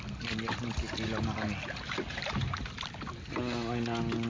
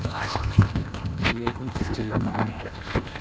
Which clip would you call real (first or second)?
first